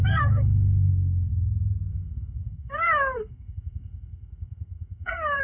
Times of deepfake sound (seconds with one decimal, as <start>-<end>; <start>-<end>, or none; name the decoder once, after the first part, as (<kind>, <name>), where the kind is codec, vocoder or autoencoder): 0.0-1.3 (codec, SNAC); 1.9-5.4

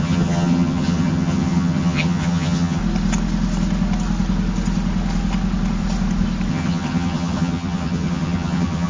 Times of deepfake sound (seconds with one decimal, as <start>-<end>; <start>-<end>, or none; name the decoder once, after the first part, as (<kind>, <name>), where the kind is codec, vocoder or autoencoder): 0.0-2.8 (vocoder, HiFi-GAN); 6.5-8.9

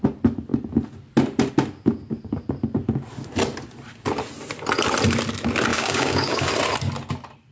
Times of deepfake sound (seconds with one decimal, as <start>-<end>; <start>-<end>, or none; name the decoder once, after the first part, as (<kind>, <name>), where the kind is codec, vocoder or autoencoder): 5.7-6.5 (codec, DAC)

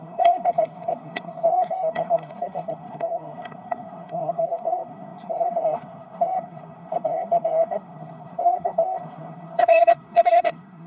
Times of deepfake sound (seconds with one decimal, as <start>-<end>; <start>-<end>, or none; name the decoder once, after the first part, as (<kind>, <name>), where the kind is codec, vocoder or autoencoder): 0.0-10.9 (codec, SNAC)